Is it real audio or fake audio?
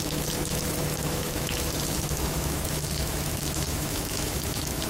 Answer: fake